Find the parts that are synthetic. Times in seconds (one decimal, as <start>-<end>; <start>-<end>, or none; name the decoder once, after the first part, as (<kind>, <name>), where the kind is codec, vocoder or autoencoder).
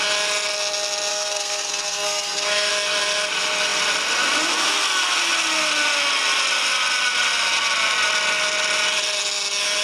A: 1.1-2.7 (codec, SNAC)